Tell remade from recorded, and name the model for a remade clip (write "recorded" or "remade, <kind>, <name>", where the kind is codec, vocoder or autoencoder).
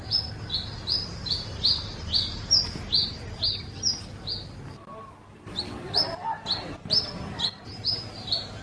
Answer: recorded